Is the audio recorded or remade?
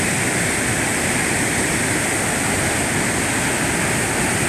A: recorded